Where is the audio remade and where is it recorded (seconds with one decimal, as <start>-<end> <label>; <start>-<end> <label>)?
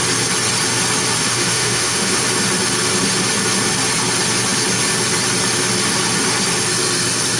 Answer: 0.0-1.2 recorded; 1.2-2.2 remade; 2.2-7.4 recorded